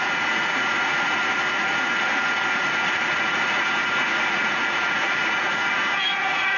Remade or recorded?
remade